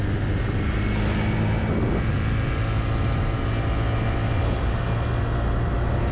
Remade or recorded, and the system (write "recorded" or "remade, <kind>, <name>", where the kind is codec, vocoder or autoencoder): recorded